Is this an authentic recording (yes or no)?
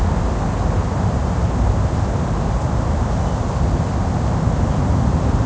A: yes